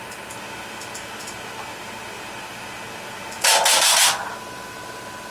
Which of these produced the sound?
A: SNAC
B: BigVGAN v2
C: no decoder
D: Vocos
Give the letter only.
C